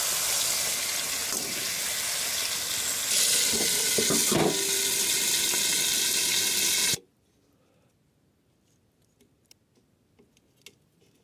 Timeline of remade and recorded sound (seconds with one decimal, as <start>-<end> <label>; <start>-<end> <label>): 0.0-11.2 recorded